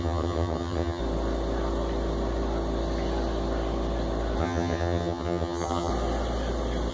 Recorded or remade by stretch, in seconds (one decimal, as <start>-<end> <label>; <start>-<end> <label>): 0.0-1.0 remade; 1.0-4.4 recorded; 4.4-5.9 remade; 5.9-6.9 recorded

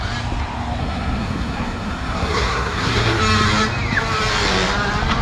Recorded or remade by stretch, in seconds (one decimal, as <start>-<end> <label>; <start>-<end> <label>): 0.0-0.8 recorded; 0.8-3.2 remade; 3.2-5.2 recorded

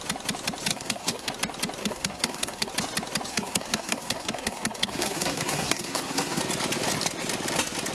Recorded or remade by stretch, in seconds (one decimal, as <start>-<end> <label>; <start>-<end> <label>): 0.0-0.7 recorded; 0.7-1.3 remade; 1.3-1.8 recorded; 1.8-2.7 remade; 2.7-3.3 recorded; 3.3-6.4 remade; 6.4-7.9 recorded

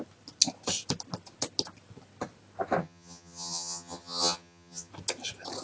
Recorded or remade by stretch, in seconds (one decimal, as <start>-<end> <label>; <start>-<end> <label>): 0.0-2.8 recorded; 2.8-4.9 remade; 4.9-5.6 recorded

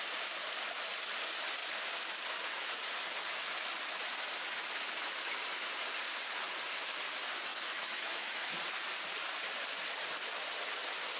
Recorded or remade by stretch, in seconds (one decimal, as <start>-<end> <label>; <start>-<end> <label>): 0.0-7.5 recorded; 7.5-8.5 remade; 8.5-11.2 recorded